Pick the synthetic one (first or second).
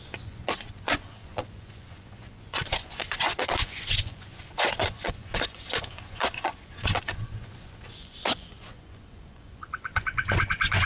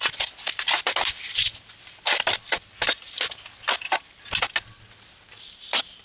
first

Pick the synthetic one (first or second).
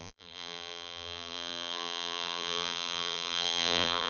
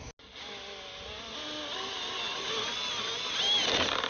first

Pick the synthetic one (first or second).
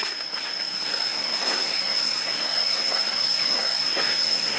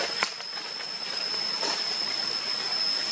first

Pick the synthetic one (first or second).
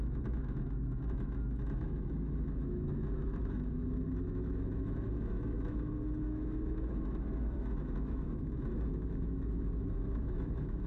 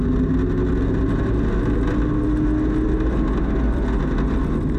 first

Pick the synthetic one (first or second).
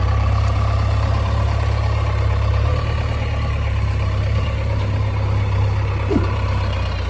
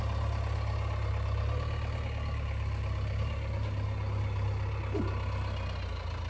first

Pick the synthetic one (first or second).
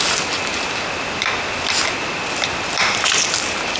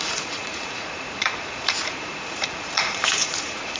second